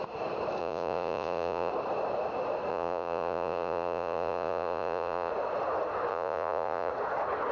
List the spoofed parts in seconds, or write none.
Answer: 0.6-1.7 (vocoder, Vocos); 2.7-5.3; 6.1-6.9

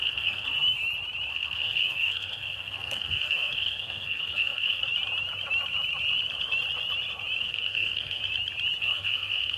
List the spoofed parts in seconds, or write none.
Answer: 0.0-0.7 (codec, SNAC); 1.3-4.8; 7.4-8.2; 8.8-9.6